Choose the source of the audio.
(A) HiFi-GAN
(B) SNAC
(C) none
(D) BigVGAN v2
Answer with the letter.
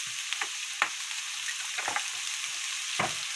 C